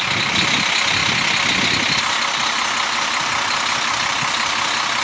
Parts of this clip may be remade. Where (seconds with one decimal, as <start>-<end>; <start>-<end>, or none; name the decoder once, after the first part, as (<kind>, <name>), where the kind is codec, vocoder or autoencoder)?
none